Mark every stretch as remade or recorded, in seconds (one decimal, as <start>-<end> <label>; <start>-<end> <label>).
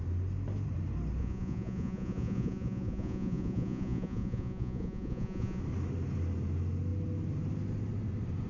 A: 0.0-1.2 recorded; 1.2-5.6 remade; 5.6-8.5 recorded